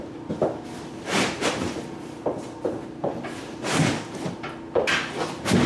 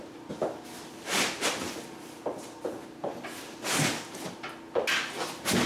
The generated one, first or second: first